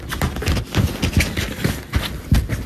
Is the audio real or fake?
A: real